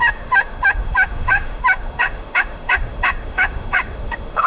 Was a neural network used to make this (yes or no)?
yes